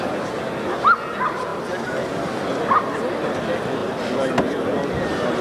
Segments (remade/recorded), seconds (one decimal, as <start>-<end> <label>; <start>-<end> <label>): 0.0-3.8 recorded; 3.8-4.9 remade; 4.9-5.4 recorded